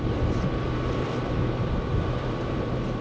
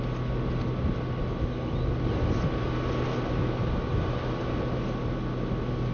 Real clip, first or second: second